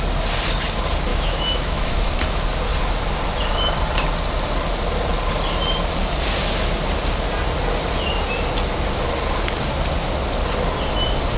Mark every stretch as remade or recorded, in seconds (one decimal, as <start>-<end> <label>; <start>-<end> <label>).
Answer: 0.0-1.1 recorded; 1.1-2.1 remade; 2.1-11.4 recorded